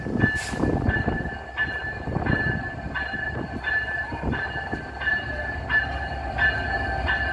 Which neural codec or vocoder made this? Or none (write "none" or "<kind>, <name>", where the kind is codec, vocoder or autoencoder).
none